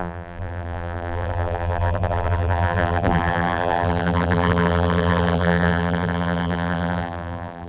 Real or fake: fake